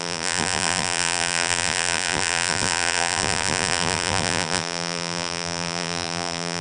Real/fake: fake